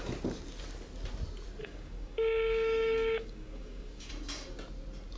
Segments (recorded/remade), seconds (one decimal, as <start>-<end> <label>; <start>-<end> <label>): 0.0-1.6 recorded; 1.6-4.1 remade; 4.1-5.2 recorded